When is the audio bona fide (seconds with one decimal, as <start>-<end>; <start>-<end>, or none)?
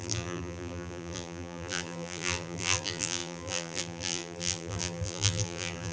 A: none